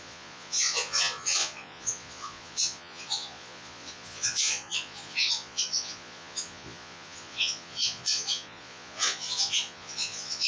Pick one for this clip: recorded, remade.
remade